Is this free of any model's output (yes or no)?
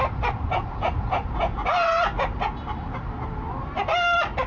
yes